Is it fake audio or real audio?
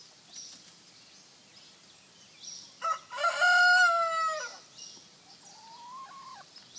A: real